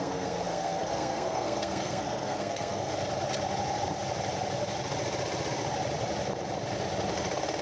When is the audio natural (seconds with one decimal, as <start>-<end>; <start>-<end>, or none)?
2.9-7.6

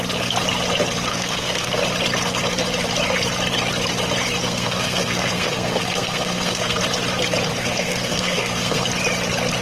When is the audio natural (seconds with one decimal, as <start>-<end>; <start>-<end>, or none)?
0.0-1.1; 1.8-4.4; 6.8-7.6; 8.9-9.6